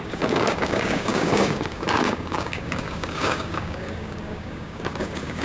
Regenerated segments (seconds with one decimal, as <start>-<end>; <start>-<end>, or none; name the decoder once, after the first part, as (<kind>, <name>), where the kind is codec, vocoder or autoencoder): 0.0-5.4 (codec, DAC)